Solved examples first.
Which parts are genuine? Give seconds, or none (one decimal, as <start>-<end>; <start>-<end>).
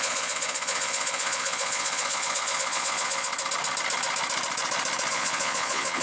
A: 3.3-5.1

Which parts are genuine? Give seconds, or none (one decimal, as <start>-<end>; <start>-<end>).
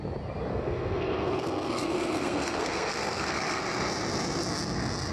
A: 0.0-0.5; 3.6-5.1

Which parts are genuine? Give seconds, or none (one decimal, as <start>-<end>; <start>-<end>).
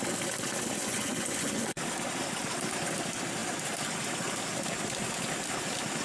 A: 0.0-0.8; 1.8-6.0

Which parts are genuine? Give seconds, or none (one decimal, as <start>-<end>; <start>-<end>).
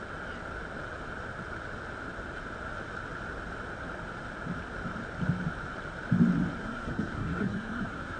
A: 0.0-6.6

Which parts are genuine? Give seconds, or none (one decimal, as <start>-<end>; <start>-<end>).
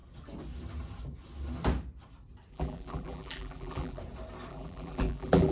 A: 0.0-2.5; 4.0-4.5